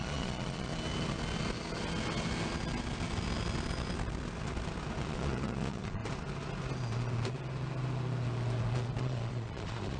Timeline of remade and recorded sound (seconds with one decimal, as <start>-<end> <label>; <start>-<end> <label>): 0.0-0.7 remade; 0.7-5.0 recorded; 5.0-6.0 remade; 6.0-9.0 recorded; 9.0-10.0 remade